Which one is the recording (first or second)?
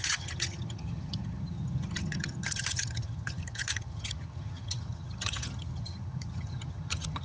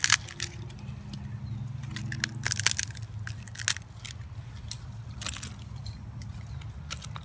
second